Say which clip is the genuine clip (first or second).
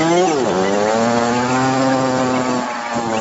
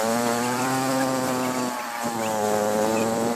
first